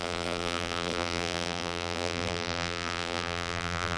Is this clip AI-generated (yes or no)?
yes